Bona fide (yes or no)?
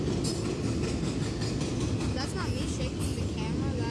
yes